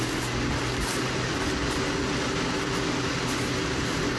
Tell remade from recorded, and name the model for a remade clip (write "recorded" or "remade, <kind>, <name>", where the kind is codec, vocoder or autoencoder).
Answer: recorded